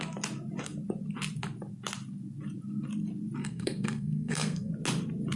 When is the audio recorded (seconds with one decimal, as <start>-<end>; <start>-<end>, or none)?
0.0-3.4; 4.7-5.4